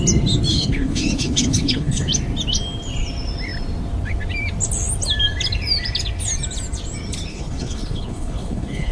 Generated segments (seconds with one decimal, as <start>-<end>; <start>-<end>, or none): 0.5-2.1; 7.3-8.9